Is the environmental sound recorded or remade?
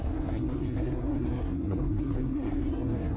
remade